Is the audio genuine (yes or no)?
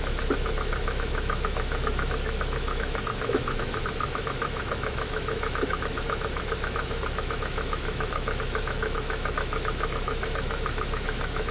no